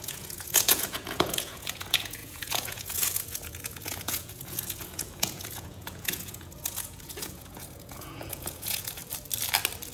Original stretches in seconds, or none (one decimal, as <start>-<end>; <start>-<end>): 9.0-9.9

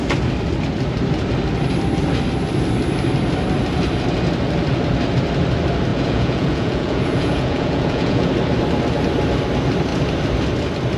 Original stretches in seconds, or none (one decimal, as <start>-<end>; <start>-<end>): 0.0-5.9; 8.3-11.0

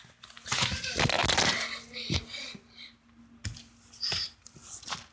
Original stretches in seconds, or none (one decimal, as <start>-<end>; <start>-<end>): 0.0-5.1

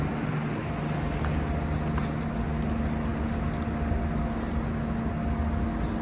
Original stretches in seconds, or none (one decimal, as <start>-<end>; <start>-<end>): 0.0-6.0

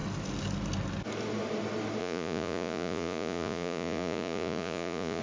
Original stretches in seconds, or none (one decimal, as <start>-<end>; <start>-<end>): 0.0-2.0